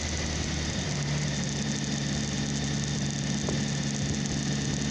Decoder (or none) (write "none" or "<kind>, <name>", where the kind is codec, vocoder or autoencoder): none